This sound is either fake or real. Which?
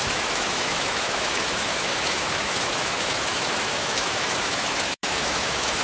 fake